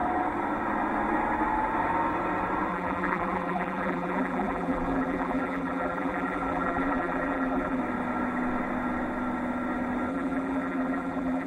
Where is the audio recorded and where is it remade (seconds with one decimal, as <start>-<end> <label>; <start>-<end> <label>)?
0.0-2.7 recorded; 2.7-7.8 remade; 7.8-10.1 recorded; 10.1-11.5 remade